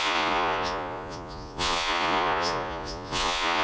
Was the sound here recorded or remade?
remade